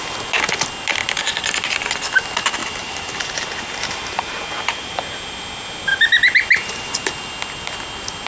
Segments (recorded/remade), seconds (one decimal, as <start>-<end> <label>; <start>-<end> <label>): 0.0-2.6 recorded; 2.6-5.0 remade; 5.0-8.3 recorded